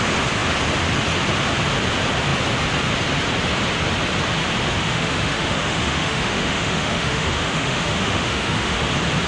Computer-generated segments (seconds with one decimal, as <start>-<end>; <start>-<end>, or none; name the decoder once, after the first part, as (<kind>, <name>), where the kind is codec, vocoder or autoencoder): 4.6-8.8 (autoencoder, DAC-VAE)